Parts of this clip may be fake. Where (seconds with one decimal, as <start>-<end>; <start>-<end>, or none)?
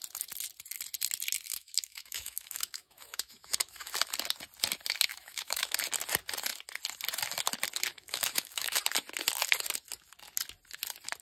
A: 1.5-3.9; 5.1-5.8; 7.9-8.8